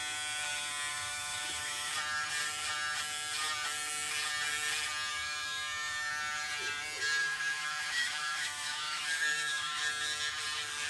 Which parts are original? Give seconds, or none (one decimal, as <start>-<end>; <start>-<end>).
0.0-0.9; 1.9-5.1; 6.1-7.2; 9.8-10.9